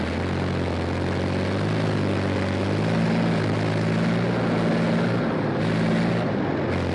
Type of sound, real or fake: real